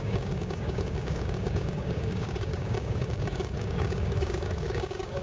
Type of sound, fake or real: fake